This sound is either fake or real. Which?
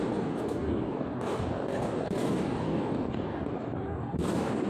fake